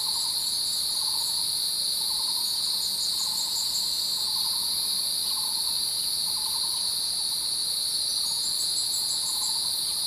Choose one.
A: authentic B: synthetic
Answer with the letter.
A